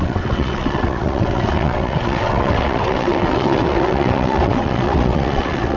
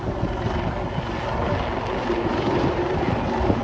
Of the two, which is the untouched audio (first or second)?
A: second